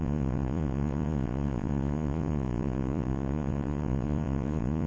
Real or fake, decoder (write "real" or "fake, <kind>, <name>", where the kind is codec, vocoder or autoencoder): fake, vocoder, Vocos